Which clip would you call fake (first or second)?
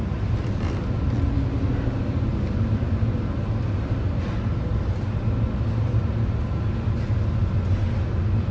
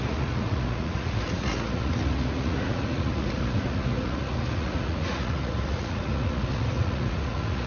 second